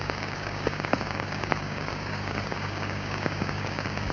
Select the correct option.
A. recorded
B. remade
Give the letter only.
B